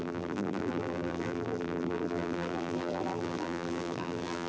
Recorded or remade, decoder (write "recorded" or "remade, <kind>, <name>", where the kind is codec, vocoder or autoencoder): remade, vocoder, BigVGAN v2